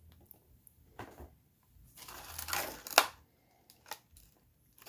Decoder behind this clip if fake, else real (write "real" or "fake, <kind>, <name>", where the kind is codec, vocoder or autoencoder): real